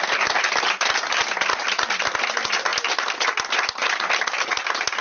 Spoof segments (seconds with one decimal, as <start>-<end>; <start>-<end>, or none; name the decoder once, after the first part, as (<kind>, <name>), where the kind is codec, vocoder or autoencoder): none